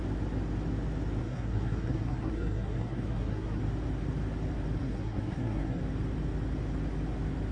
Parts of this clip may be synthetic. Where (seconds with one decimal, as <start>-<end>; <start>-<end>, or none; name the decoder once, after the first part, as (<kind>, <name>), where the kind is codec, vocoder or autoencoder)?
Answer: 1.2-3.6 (codec, SNAC); 4.8-5.8